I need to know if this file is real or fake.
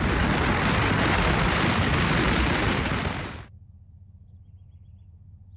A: real